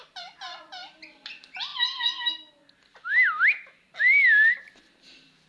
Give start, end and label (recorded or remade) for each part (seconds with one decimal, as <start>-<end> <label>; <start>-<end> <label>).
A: 0.0-5.5 recorded